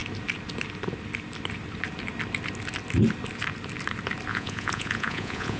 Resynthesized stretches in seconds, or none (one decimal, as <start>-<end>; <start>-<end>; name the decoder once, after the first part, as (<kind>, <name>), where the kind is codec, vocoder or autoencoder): 4.3-5.6 (vocoder, Vocos)